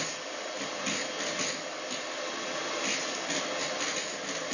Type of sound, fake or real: real